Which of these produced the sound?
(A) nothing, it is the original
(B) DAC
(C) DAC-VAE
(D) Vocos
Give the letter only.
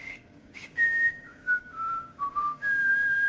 B